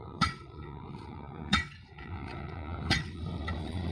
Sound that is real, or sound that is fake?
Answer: fake